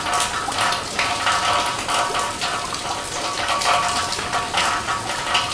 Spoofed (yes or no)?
no